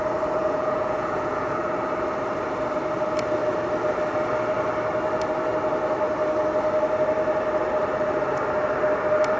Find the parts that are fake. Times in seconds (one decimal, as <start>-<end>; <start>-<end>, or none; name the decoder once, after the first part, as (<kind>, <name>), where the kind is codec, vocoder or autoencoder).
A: 0.4-1.5 (vocoder, Vocos)